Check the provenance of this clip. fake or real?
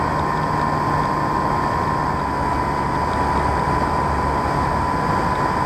real